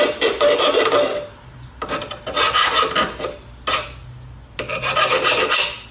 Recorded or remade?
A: recorded